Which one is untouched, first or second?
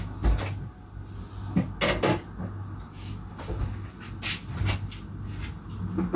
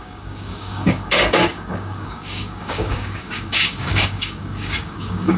first